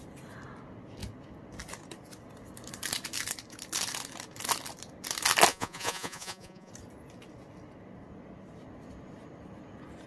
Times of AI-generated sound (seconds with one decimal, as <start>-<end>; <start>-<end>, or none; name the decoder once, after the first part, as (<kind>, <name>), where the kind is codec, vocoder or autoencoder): 5.5-6.7 (vocoder, Vocos)